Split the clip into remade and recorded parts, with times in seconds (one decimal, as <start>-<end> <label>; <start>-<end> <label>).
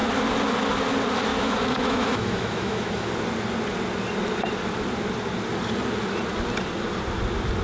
0.0-1.3 recorded; 1.3-3.1 remade; 3.1-7.6 recorded